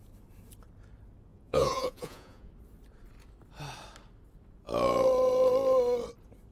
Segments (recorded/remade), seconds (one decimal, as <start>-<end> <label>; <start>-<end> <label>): 0.0-1.3 recorded; 1.3-2.5 remade; 2.5-6.5 recorded